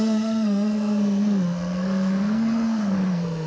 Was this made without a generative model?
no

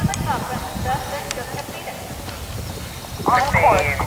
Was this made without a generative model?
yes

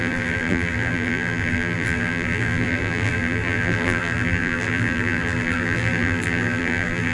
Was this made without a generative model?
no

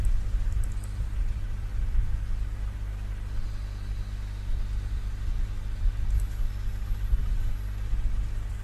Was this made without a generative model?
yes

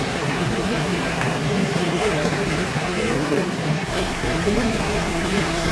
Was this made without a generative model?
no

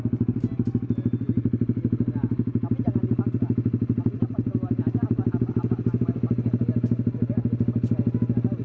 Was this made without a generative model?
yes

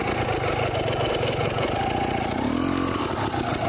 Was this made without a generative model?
yes